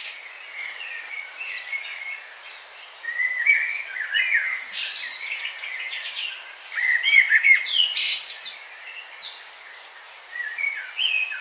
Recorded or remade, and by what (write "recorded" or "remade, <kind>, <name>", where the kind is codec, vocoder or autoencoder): remade, vocoder, Vocos